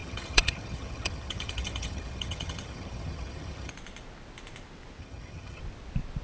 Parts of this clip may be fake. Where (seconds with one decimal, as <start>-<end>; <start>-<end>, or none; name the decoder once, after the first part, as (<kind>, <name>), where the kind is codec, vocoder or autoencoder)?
0.0-3.7 (vocoder, HiFi-GAN); 5.0-5.6